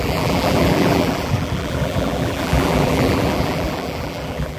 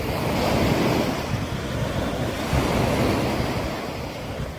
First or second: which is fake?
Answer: first